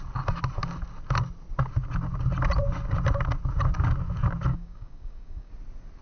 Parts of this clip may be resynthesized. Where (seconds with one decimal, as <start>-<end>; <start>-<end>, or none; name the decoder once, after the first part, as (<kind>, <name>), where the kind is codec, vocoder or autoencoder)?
4.5-5.5 (codec, DAC)